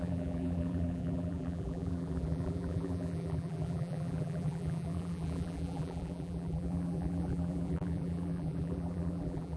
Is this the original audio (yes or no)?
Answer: no